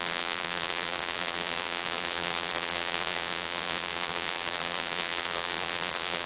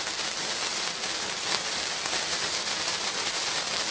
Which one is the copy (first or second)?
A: first